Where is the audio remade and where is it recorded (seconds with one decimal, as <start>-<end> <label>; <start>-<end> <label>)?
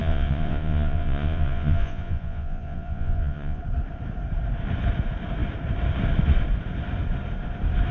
0.0-3.6 remade; 3.6-7.9 recorded